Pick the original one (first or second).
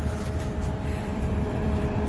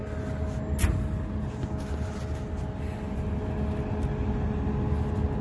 second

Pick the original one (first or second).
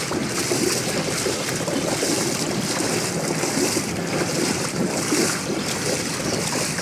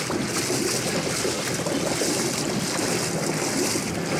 second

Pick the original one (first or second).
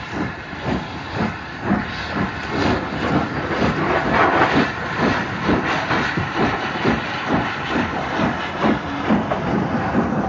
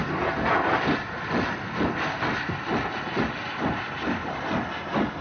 second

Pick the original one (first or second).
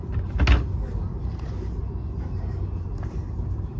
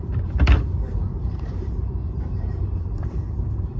first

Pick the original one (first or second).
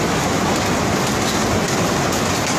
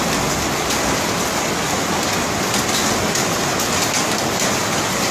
second